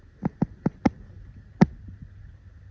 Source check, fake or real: real